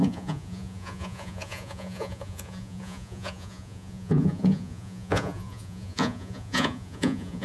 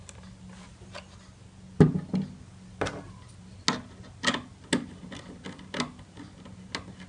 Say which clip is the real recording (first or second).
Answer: second